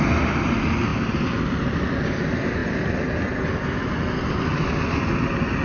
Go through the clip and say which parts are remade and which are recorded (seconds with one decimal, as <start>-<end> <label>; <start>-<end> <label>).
0.0-5.6 recorded